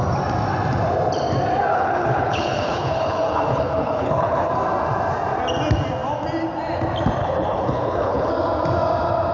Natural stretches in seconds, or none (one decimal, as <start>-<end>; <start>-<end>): 0.0-1.7; 4.5-7.2; 8.3-9.3